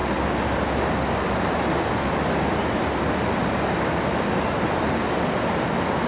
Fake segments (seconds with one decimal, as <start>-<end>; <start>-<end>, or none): none